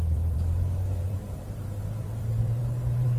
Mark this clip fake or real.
fake